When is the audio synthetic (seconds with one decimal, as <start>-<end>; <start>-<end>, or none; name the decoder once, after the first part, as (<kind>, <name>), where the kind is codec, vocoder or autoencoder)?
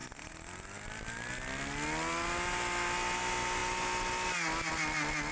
none